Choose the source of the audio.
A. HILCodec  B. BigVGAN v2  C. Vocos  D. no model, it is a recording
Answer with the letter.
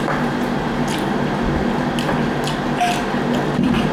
D